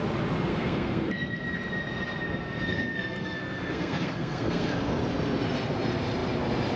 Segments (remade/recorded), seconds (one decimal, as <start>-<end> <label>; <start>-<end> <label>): 0.0-0.5 recorded; 0.5-1.4 remade; 1.4-2.7 recorded; 2.7-5.0 remade; 5.0-6.8 recorded